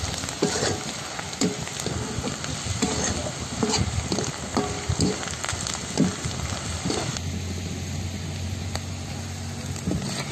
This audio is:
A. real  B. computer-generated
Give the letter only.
A